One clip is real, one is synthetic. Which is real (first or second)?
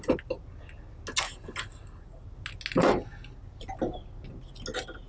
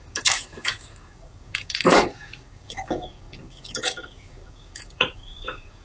first